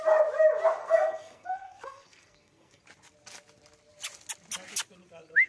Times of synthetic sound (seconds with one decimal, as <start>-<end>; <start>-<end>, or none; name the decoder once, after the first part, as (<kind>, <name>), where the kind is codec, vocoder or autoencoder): 0.8-2.8 (codec, SNAC)